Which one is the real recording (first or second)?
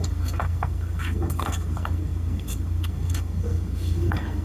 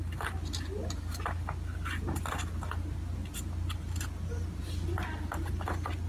second